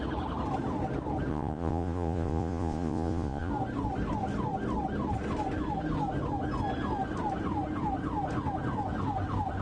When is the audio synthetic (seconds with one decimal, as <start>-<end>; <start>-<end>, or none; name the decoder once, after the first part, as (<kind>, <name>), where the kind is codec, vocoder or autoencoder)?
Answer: 1.3-3.5 (vocoder, Vocos)